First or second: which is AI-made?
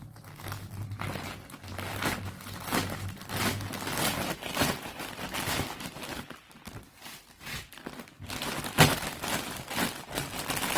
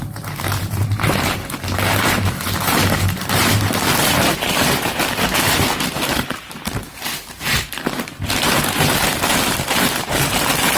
second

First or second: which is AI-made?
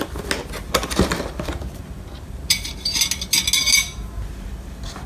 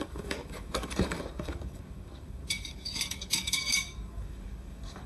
second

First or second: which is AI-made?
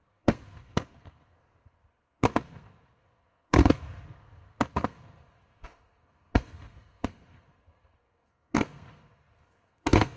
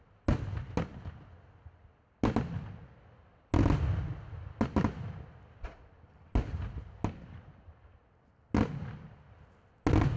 first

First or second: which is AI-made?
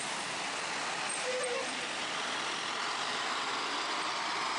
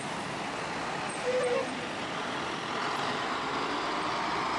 first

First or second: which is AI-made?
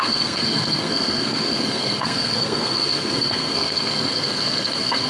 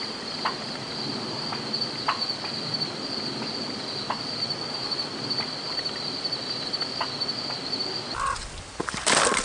first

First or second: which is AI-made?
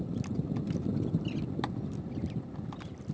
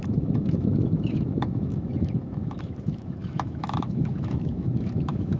second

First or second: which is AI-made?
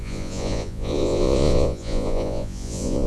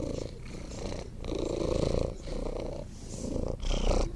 first